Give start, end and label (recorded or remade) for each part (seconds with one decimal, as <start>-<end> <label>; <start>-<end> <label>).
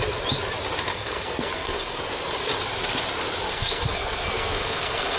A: 0.0-0.9 recorded; 0.9-2.0 remade; 2.0-3.5 recorded; 3.5-5.2 remade